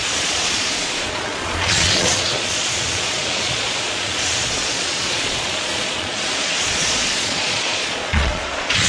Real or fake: fake